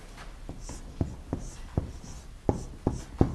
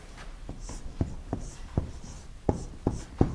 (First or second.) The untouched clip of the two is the first